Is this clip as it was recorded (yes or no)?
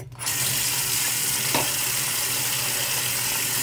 yes